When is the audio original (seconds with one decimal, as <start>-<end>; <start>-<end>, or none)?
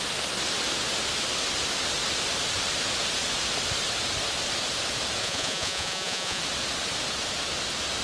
0.0-5.2; 6.4-8.0